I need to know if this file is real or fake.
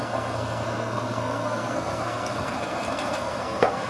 fake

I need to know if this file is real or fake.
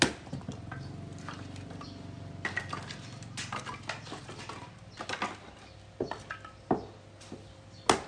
real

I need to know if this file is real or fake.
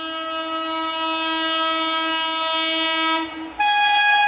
real